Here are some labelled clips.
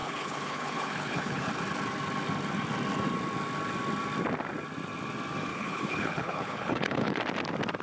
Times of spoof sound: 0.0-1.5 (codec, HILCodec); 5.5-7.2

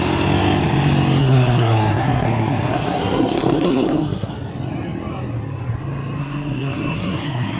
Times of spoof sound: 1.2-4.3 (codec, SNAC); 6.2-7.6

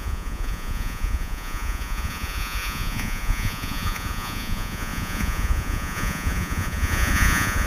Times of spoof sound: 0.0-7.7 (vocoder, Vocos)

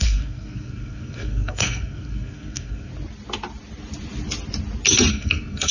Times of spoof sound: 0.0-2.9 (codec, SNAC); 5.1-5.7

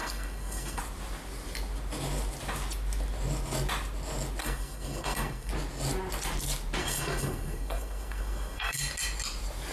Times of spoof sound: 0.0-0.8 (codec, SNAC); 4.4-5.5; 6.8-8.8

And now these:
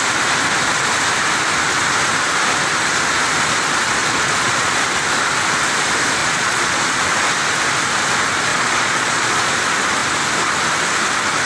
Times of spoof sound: 4.0-4.8 (vocoder, Vocos); 6.2-7.0; 8.5-9.5

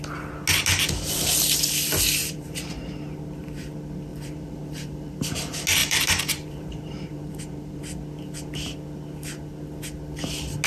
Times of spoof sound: 2.2-3.0 (vocoder, BigVGAN v2); 4.1-5.1; 5.8-7.8

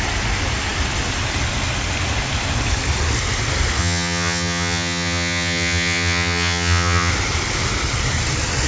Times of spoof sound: 3.8-7.1 (vocoder, HiFi-GAN)